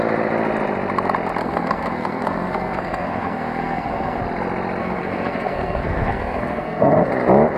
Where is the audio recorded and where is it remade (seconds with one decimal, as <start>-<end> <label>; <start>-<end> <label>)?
0.0-1.4 recorded; 1.4-4.2 remade; 4.2-4.8 recorded; 4.8-7.1 remade; 7.1-7.6 recorded